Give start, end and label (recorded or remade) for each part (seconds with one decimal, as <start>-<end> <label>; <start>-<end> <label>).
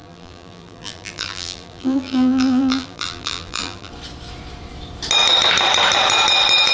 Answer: 0.0-3.9 remade; 3.9-6.7 recorded